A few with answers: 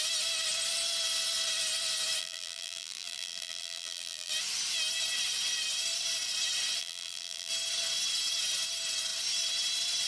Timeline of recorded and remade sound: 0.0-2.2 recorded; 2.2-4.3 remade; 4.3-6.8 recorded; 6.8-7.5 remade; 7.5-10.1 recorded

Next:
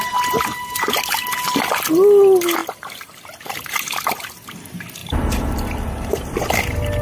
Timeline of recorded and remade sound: 0.0-5.0 recorded; 5.0-6.4 remade; 6.4-7.0 recorded

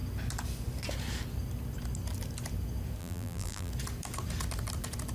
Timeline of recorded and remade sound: 0.0-3.0 recorded; 3.0-3.7 remade; 3.7-5.1 recorded